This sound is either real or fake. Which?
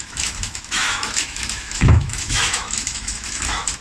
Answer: fake